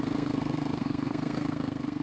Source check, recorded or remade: remade